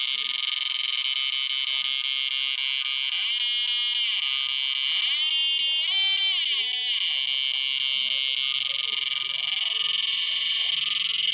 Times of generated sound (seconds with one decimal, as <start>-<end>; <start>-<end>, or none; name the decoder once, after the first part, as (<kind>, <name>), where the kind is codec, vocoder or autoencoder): 10.1-10.7 (vocoder, Vocos)